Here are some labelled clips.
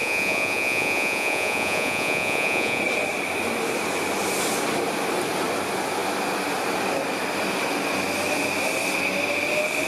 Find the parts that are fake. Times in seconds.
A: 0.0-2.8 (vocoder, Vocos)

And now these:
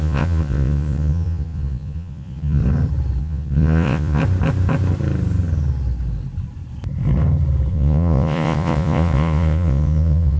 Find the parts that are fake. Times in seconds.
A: 0.0-2.6 (vocoder, Vocos); 3.2-4.2; 7.7-10.4

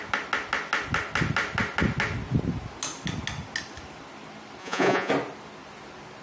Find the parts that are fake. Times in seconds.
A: 4.6-5.1 (vocoder, Vocos)

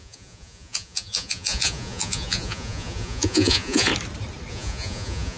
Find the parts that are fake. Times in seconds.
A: 0.0-3.9 (vocoder, Vocos); 4.5-5.4

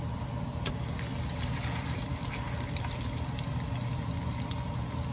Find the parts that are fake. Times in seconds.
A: none

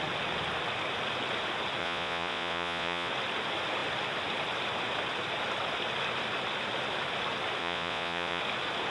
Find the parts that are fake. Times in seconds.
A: 1.8-3.1 (vocoder, Vocos); 7.6-8.4

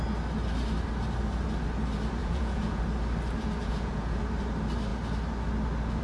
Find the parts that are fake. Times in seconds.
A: 2.2-2.8 (vocoder, Vocos); 3.6-4.2

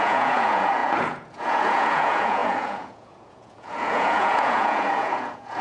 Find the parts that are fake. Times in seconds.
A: 0.0-5.6 (vocoder, Vocos)